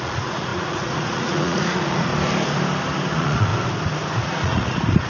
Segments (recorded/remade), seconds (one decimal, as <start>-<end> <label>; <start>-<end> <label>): 0.0-2.1 remade; 2.1-3.1 recorded; 3.1-3.5 remade; 3.5-4.2 recorded; 4.2-5.1 remade